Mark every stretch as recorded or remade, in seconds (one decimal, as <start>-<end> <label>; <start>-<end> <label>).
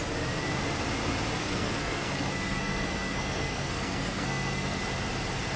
0.0-1.4 recorded; 1.4-4.8 remade; 4.8-5.6 recorded